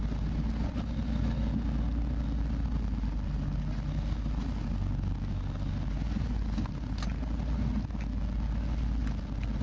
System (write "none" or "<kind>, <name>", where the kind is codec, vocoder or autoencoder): none